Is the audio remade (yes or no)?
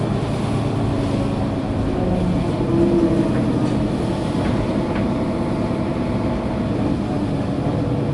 no